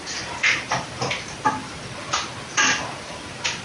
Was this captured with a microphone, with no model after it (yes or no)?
yes